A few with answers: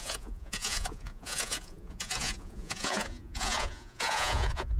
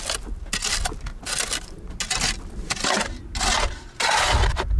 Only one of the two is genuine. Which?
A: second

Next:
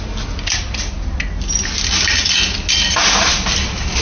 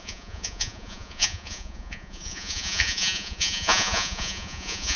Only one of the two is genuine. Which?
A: first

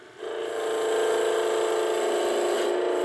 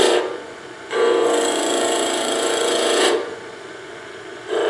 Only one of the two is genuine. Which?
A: first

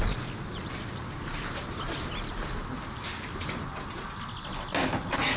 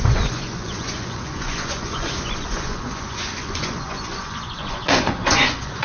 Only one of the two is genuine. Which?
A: first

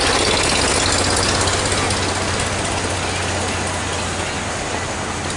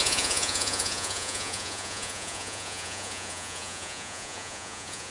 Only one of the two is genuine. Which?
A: first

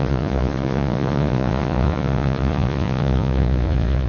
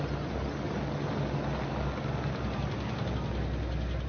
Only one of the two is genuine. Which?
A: second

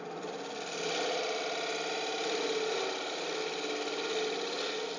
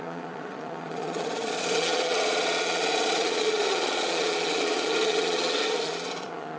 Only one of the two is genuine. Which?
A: first